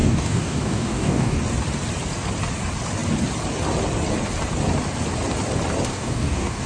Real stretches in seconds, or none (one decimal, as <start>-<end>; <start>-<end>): 1.4-5.9